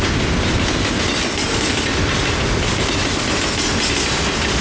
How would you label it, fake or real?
real